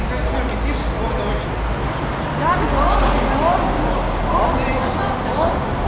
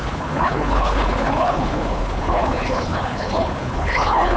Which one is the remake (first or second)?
second